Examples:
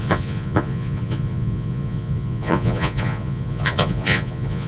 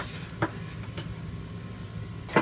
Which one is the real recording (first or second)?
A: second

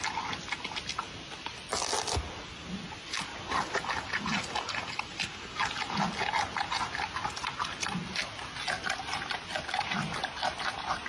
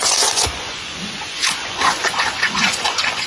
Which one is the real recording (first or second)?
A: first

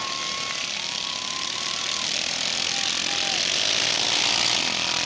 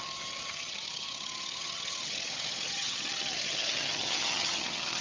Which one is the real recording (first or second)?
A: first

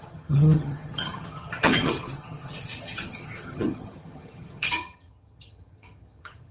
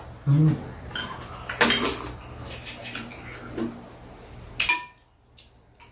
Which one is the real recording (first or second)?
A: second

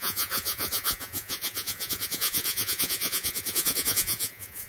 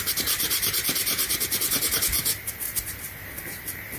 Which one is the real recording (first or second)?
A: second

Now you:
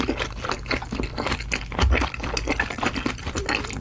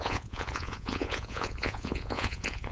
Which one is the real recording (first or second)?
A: first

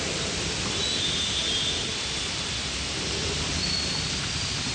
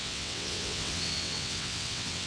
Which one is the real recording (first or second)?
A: first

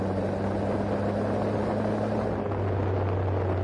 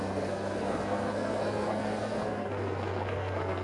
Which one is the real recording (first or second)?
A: first